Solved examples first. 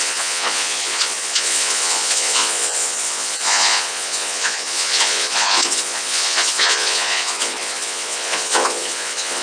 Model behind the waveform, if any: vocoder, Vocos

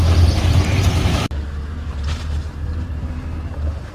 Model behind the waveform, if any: vocoder, BigVGAN v2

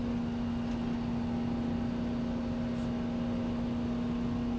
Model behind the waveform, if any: none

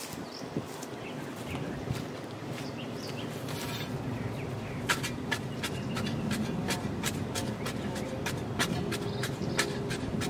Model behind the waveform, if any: none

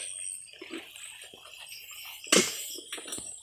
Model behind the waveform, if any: none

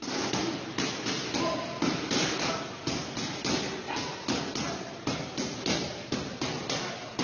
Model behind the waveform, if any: none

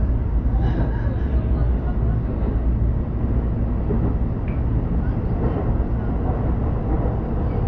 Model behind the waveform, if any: none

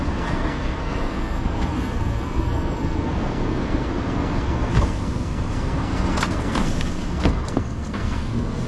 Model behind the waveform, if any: codec, SNAC